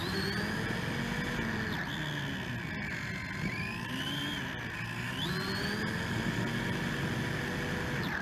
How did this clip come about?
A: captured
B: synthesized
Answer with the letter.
A